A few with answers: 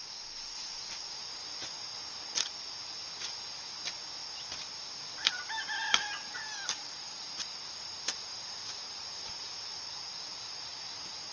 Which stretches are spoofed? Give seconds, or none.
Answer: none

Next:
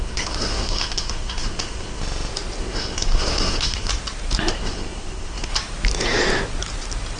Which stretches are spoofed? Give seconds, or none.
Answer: 0.0-2.0 (codec, SNAC); 2.6-3.9; 4.5-5.5

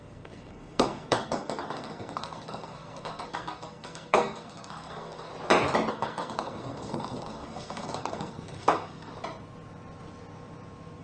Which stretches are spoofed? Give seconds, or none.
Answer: 0.0-5.3 (codec, SNAC); 5.9-9.1